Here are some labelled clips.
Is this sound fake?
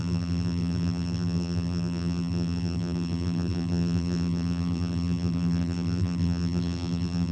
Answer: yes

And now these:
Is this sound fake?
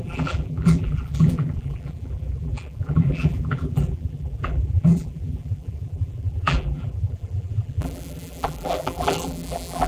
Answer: yes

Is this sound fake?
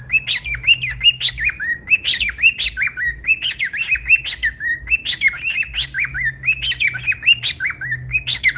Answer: no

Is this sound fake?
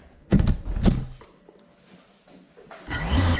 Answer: no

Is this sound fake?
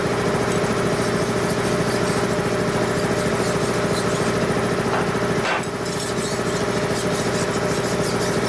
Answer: no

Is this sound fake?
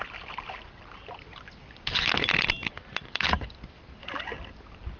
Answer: yes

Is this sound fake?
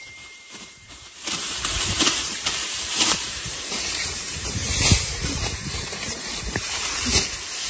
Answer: yes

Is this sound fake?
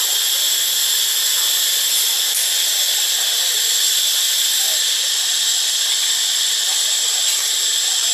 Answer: no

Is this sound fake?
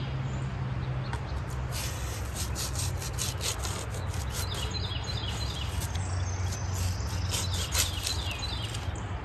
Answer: no